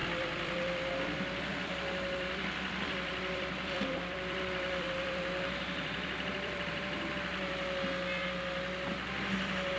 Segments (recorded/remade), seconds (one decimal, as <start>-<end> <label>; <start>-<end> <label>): 0.0-0.9 remade; 0.9-1.5 recorded; 1.5-6.8 remade; 6.8-9.8 recorded